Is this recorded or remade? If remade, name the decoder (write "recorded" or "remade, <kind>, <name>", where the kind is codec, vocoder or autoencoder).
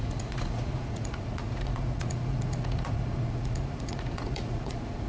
remade, vocoder, Vocos